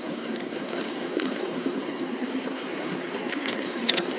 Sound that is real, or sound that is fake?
fake